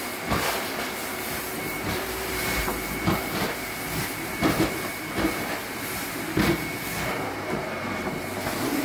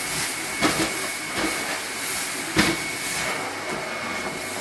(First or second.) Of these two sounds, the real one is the second